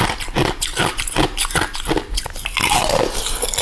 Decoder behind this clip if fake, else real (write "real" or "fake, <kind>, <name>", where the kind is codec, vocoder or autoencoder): real